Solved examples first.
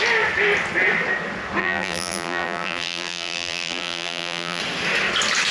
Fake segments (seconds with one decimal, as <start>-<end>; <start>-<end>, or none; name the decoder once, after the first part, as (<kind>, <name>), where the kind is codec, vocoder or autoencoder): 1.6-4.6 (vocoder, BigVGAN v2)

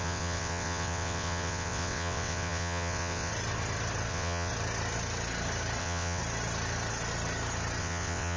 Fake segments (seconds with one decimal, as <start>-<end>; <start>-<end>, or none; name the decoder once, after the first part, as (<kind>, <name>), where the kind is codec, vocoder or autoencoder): 0.0-3.3 (vocoder, WaveNeXt); 4.1-4.5; 5.8-6.2; 7.8-8.4

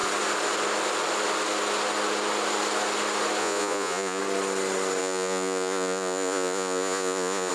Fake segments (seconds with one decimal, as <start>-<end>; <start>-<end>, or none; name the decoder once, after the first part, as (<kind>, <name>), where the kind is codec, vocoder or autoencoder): 3.4-4.2 (vocoder, Vocos); 5.0-7.5

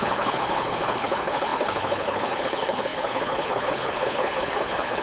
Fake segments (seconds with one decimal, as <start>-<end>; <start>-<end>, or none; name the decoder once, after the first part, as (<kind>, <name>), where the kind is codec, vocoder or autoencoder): 0.0-5.0 (codec, HILCodec)

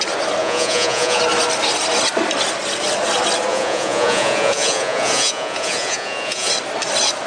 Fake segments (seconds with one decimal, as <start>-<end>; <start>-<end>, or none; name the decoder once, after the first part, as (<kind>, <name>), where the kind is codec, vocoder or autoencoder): 0.4-1.2 (vocoder, Vocos); 3.5-6.5